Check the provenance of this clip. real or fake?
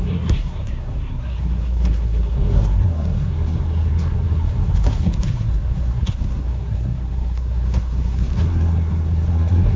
fake